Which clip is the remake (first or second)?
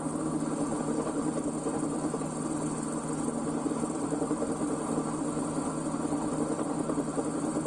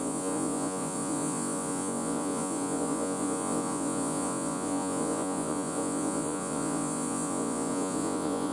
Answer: second